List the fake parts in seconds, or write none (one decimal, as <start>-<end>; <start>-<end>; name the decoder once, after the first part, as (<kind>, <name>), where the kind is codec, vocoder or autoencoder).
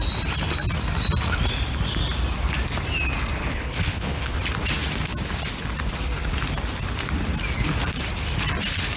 3.4-4.4 (codec, HILCodec)